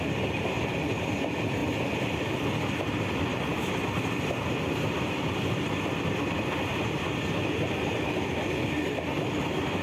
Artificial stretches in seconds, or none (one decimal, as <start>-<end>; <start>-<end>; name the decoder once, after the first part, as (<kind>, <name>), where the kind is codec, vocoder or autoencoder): none